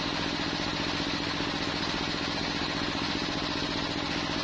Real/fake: real